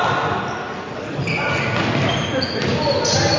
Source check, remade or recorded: recorded